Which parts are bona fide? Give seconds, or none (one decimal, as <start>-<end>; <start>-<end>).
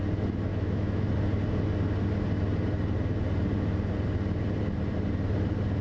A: 0.0-0.5; 1.1-5.8